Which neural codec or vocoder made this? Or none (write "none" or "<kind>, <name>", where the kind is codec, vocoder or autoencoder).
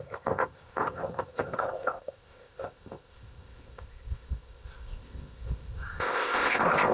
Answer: codec, ZipCodec